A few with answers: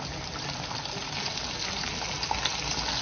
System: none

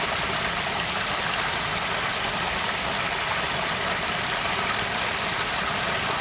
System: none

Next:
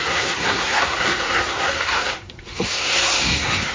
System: codec, SNAC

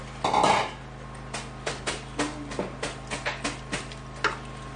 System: none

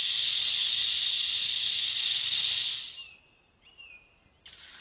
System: none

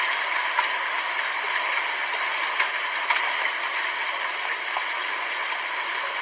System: none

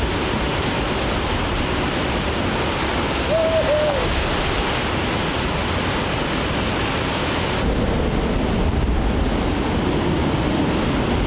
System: none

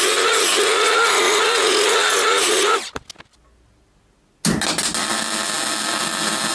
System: none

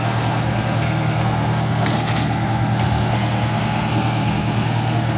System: codec, SNAC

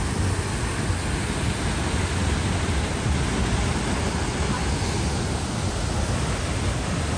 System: none